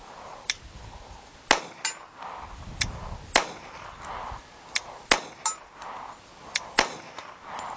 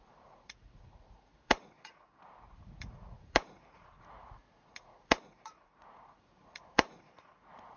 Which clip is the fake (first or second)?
second